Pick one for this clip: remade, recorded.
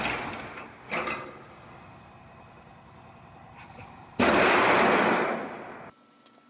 recorded